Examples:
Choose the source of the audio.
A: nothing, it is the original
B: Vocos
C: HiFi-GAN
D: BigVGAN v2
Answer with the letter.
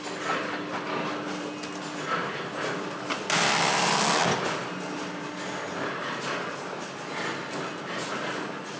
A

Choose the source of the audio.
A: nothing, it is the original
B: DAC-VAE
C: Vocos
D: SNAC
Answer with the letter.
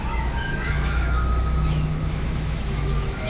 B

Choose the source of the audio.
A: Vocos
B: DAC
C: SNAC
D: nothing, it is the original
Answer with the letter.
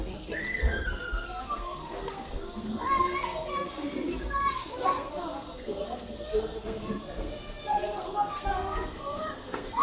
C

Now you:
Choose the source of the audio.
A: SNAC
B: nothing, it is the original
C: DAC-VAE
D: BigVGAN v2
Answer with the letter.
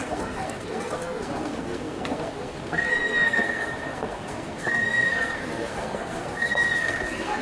A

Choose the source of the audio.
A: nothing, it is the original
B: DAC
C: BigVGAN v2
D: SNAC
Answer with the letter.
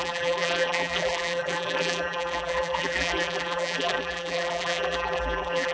C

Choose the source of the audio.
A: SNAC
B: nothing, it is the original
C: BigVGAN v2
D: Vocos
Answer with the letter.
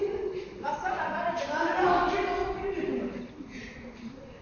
B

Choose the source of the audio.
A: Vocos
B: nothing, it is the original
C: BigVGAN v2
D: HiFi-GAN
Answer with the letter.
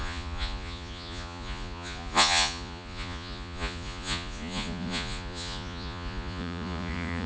A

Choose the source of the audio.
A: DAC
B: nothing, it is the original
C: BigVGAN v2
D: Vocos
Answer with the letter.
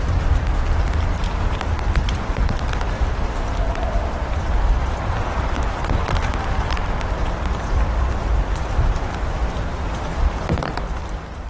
C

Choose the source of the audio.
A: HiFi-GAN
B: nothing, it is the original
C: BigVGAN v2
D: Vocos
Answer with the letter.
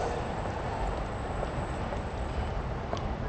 B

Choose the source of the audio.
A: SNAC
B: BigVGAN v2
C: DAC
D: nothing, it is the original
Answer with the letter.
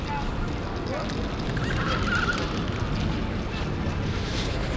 D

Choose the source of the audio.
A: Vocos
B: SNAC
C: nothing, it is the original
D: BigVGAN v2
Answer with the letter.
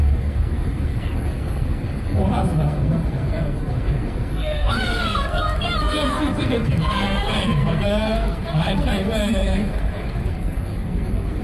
B